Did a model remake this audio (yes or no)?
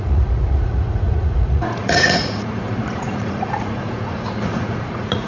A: yes